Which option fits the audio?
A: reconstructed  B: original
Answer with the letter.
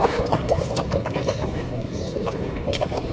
A